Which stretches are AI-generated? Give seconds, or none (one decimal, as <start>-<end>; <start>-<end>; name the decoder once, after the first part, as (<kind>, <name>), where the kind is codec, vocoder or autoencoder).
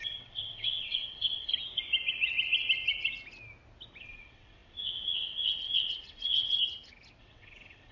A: 0.0-1.5 (vocoder, WaveNeXt); 4.0-6.6; 7.2-7.9